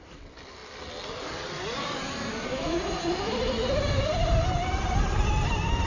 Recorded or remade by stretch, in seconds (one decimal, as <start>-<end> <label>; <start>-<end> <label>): 0.0-5.9 recorded